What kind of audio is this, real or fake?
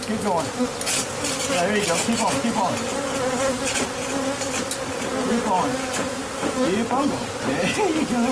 real